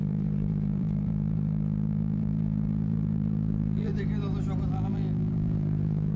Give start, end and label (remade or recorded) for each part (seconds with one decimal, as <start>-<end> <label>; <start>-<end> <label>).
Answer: 0.0-3.9 remade; 3.9-4.7 recorded; 4.7-6.2 remade